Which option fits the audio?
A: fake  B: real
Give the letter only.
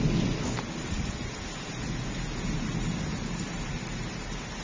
B